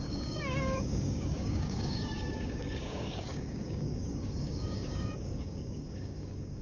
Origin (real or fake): fake